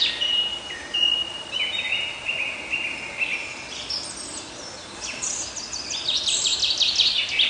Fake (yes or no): no